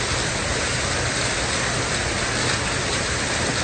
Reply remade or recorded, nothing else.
recorded